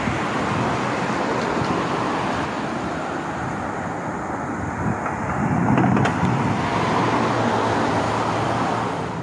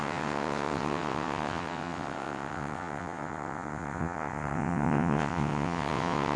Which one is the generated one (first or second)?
second